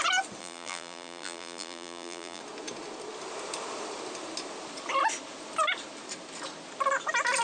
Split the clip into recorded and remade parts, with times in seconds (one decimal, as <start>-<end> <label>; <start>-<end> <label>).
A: 0.0-0.4 recorded; 0.4-2.4 remade; 2.4-7.4 recorded